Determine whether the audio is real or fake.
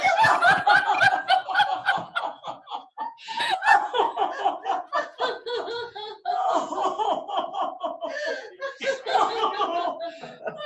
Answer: fake